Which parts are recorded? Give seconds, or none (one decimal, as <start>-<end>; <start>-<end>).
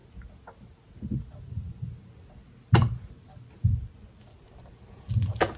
0.0-5.6